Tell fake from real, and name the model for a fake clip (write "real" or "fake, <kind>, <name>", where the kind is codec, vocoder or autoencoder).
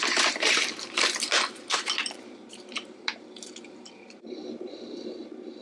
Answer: fake, vocoder, BigVGAN v2